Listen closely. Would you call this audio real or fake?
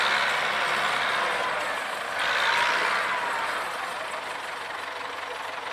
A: real